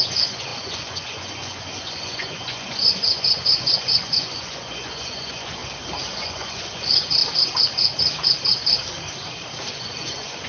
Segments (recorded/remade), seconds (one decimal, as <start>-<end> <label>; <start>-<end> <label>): 0.0-5.6 remade; 5.6-6.1 recorded; 6.1-7.2 remade; 7.2-9.7 recorded; 9.7-10.5 remade